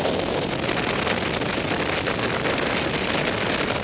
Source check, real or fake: real